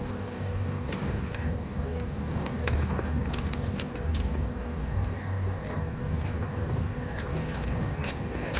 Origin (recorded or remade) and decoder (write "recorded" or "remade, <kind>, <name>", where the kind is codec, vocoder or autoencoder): remade, codec, DAC